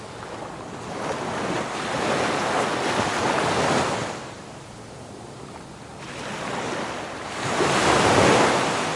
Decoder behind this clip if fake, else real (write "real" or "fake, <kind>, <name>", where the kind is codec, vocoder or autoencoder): real